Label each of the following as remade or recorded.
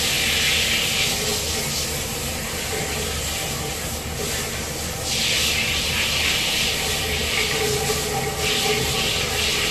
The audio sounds recorded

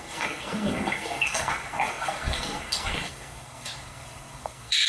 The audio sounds remade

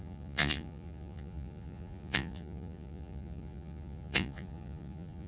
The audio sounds remade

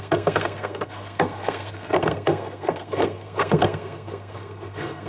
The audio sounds remade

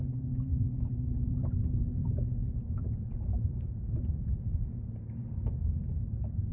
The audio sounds remade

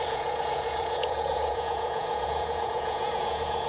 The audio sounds remade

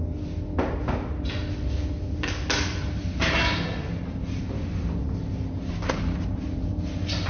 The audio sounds recorded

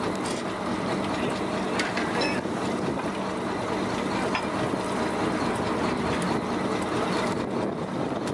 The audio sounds recorded